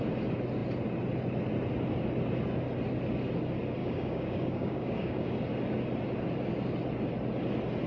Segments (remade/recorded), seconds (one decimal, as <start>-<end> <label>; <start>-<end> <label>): 0.0-3.8 recorded; 3.8-5.3 remade; 5.3-7.9 recorded